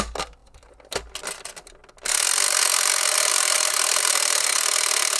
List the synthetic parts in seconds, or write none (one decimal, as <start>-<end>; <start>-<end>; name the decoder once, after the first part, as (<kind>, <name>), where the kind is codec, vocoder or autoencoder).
none